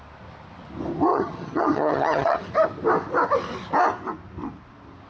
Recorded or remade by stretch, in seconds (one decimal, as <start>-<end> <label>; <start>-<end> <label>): 0.0-1.1 recorded; 1.1-2.4 remade; 2.4-5.1 recorded